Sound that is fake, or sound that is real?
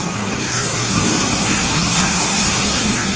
fake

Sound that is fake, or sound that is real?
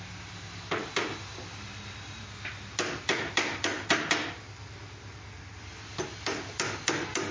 real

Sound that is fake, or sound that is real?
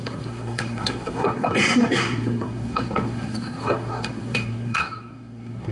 fake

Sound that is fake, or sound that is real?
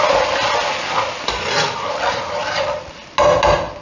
real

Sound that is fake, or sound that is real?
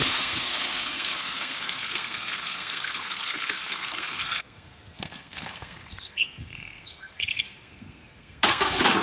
fake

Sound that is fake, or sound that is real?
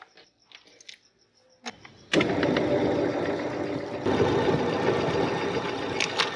real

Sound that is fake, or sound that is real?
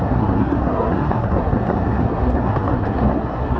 fake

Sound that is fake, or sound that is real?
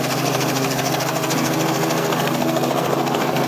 fake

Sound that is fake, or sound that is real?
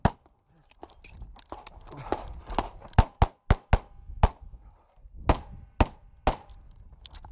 real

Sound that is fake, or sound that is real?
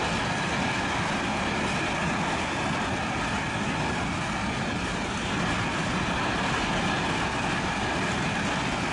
real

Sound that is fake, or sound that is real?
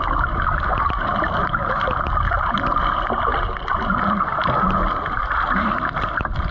real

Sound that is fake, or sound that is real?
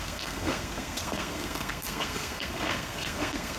fake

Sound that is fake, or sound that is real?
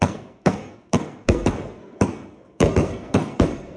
fake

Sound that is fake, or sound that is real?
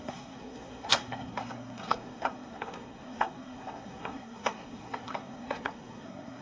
fake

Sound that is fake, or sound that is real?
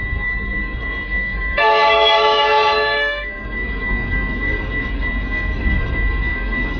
fake